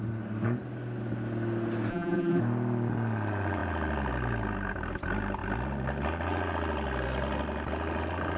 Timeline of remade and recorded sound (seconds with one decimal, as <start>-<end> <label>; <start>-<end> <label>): 0.0-1.9 recorded; 1.9-2.4 remade; 2.4-8.4 recorded